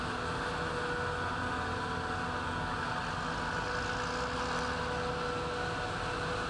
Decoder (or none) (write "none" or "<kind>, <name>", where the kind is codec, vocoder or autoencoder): none